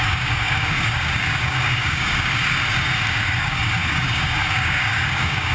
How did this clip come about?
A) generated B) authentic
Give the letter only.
A